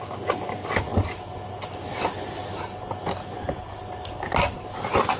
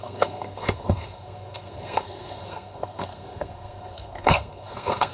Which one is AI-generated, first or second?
second